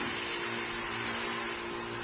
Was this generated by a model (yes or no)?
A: no